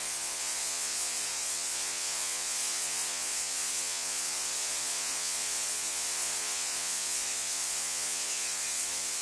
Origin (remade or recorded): remade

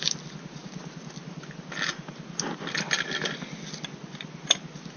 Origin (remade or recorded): recorded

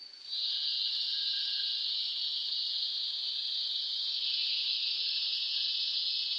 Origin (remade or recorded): remade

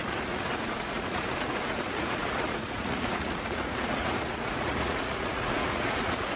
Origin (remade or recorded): remade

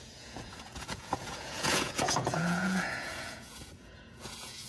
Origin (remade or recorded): remade